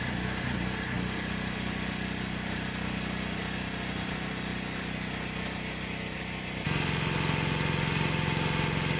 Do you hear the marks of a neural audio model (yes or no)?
no